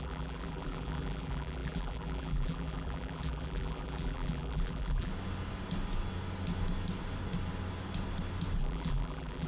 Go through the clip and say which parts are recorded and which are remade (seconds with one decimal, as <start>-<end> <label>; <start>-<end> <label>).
0.0-5.1 remade; 5.1-8.6 recorded; 8.6-9.5 remade